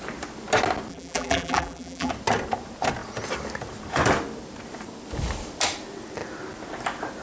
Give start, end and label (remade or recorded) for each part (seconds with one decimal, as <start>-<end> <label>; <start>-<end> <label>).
0.0-0.9 recorded; 0.9-2.1 remade; 2.1-7.2 recorded